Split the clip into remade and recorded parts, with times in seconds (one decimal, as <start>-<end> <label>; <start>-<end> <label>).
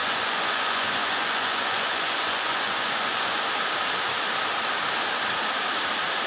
0.0-3.4 remade; 3.4-6.3 recorded